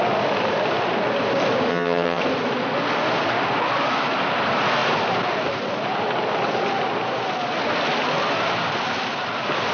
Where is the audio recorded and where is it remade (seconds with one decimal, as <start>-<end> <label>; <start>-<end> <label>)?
0.0-1.7 recorded; 1.7-2.2 remade; 2.2-9.7 recorded